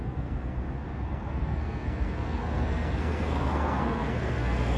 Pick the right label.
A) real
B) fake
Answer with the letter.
B